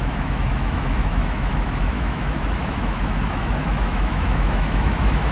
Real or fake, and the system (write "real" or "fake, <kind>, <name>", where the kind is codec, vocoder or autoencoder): fake, autoencoder, DAC-VAE